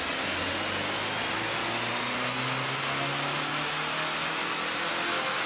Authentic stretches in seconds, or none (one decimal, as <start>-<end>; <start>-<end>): 0.0-5.5